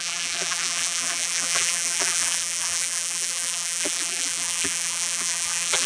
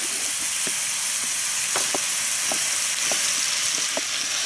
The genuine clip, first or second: second